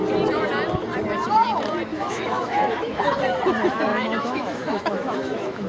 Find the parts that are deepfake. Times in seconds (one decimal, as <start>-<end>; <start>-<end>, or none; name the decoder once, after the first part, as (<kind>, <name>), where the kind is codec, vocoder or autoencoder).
1.9-3.0 (autoencoder, DAC-VAE); 3.9-5.7